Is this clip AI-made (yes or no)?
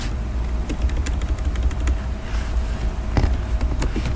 no